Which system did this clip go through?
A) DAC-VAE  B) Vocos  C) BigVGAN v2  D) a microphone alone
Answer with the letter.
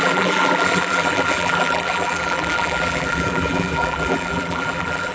C